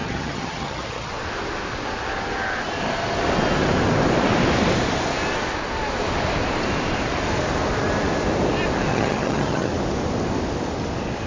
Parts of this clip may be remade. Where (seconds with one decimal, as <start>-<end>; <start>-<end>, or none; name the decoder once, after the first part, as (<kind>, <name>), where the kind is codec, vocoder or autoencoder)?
0.0-1.1 (vocoder, HiFi-GAN); 8.9-9.7